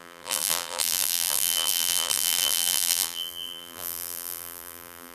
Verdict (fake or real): fake